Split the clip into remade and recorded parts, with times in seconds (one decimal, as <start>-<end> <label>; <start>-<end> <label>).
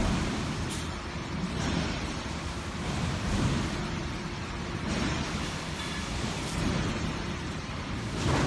0.0-8.5 recorded